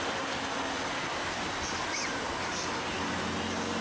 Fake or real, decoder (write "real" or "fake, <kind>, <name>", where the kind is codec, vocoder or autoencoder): real